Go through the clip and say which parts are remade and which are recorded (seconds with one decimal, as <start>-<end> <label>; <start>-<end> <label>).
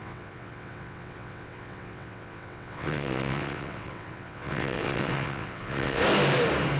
0.0-6.0 remade; 6.0-6.8 recorded